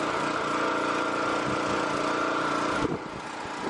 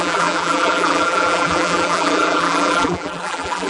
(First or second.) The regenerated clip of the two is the second